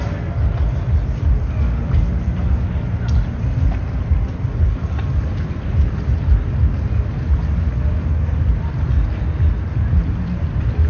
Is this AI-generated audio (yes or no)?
no